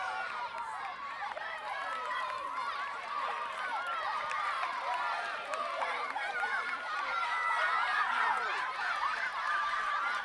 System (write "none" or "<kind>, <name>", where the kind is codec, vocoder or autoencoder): vocoder, BigVGAN v2